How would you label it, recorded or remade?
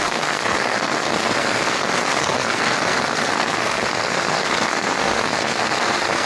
remade